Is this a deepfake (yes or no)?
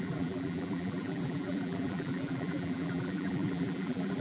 yes